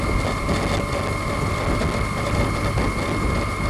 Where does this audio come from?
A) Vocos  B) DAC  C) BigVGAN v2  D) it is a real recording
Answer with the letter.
D